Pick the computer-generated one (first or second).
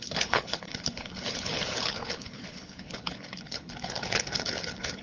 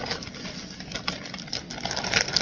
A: first